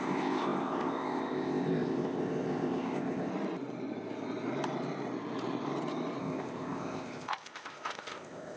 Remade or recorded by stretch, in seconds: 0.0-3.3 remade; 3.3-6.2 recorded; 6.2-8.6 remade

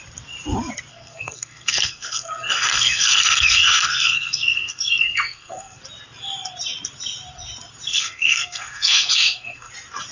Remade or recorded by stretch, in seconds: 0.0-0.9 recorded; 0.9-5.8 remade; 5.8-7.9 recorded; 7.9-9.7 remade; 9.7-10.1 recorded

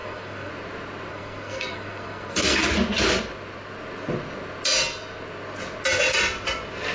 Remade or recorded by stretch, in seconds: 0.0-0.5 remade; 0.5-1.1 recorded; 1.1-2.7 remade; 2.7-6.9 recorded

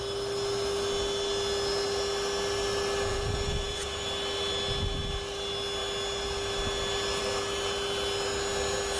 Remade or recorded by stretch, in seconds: 0.0-3.1 recorded; 3.1-4.0 remade; 4.0-9.0 recorded

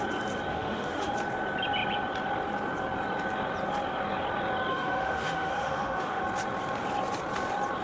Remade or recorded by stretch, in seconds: 0.0-0.5 recorded; 0.5-1.1 remade; 1.1-4.7 recorded; 4.7-6.2 remade; 6.2-7.8 recorded

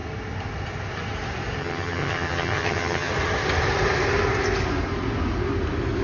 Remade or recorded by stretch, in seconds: 0.0-1.6 recorded; 1.6-3.1 remade; 3.1-6.0 recorded

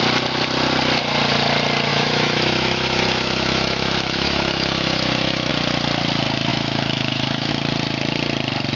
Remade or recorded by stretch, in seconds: 0.0-1.9 recorded; 1.9-5.5 remade; 5.5-6.5 recorded; 6.5-7.5 remade; 7.5-8.8 recorded